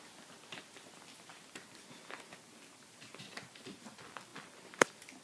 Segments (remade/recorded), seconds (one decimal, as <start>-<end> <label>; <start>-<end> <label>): 0.0-5.2 recorded